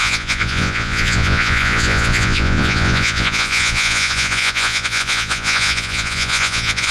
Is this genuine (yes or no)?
no